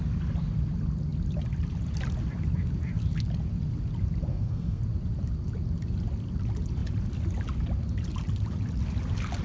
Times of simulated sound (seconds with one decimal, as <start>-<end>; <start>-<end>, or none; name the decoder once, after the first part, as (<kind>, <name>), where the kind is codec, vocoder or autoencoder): 4.3-4.8 (codec, SNAC)